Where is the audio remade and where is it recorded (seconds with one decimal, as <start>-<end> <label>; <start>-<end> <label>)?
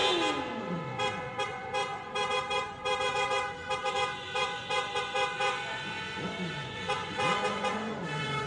0.0-0.6 recorded; 0.6-8.5 remade